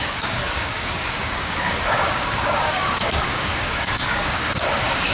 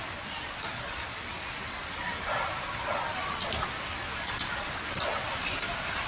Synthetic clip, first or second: first